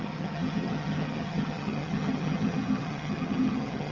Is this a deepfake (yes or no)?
yes